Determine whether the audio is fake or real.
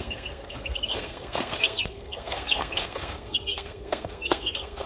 fake